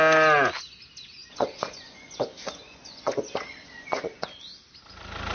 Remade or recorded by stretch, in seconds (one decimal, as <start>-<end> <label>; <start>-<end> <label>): 0.0-1.2 recorded; 1.2-4.4 remade; 4.4-5.3 recorded